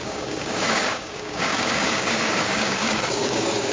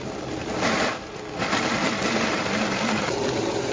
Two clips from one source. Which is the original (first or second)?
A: second